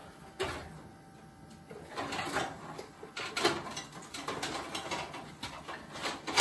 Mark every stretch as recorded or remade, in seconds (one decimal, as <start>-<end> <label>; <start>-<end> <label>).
0.0-6.4 recorded